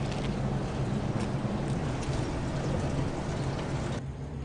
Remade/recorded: recorded